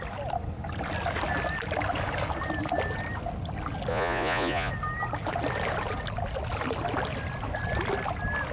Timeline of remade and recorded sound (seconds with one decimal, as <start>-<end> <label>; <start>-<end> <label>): 0.0-3.9 recorded; 3.9-4.7 remade; 4.7-8.5 recorded